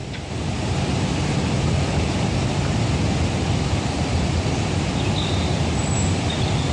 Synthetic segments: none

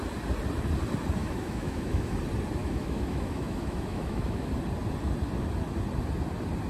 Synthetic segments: 1.2-2.1 (autoencoder, DAC-VAE); 2.6-4.5